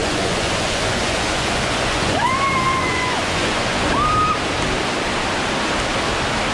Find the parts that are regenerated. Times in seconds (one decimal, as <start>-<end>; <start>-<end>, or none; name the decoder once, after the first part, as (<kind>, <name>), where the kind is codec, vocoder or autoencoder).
0.0-3.9 (vocoder, Vocos)